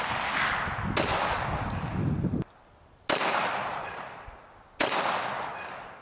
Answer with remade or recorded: recorded